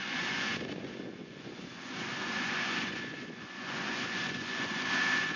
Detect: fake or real fake